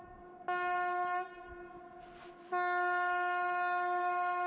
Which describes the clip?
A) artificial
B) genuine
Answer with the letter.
B